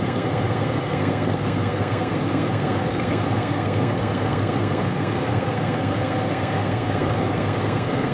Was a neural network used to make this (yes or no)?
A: yes